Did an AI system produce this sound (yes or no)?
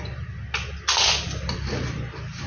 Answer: no